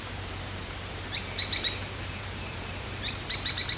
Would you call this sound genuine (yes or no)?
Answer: no